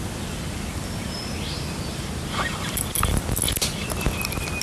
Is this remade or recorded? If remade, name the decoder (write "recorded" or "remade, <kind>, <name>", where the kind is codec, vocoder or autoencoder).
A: recorded